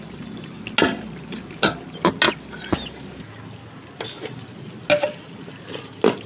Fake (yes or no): no